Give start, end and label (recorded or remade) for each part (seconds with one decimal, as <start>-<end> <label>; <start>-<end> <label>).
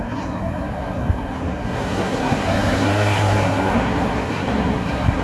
0.0-5.2 remade